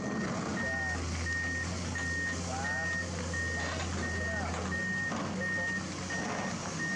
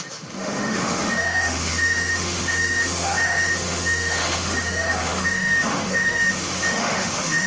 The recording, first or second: first